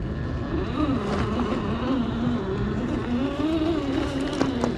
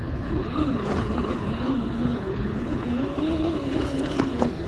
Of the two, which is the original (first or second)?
first